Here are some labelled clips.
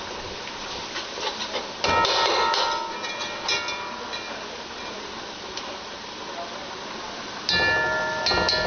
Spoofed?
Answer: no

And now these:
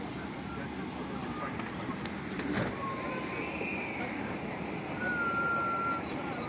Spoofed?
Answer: no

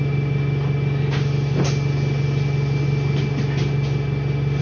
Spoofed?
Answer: no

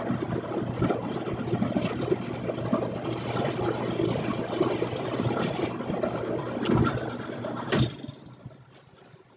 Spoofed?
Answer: no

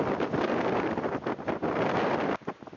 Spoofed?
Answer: no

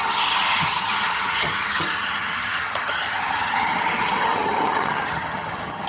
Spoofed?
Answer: yes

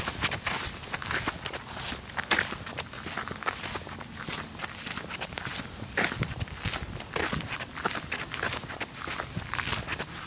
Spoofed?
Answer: no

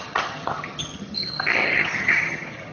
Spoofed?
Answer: yes